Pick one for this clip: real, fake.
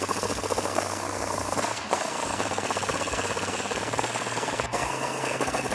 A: fake